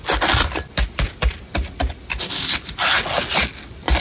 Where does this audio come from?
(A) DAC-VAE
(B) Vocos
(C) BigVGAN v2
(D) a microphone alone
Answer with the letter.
D